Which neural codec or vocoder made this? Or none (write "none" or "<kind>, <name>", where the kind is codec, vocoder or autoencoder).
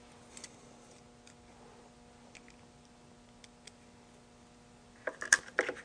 none